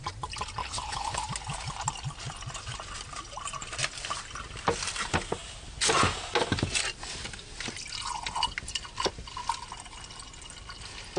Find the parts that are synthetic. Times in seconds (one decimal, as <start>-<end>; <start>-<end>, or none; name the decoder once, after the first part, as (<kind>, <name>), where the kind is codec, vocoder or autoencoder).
0.6-1.2 (codec, HILCodec)